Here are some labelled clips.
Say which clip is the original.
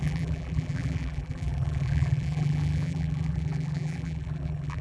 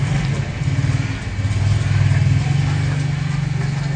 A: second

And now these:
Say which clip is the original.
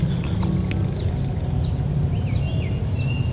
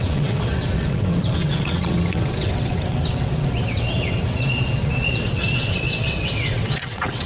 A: first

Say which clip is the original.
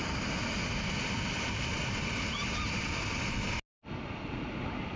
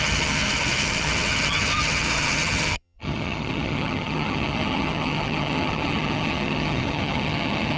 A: first